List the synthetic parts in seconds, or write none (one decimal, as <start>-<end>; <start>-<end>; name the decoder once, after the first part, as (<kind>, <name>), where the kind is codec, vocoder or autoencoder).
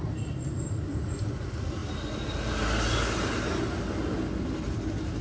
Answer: none